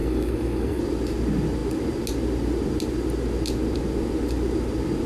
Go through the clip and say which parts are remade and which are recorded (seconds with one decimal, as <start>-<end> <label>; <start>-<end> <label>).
0.0-0.8 remade; 0.8-5.1 recorded